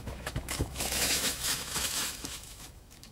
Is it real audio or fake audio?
fake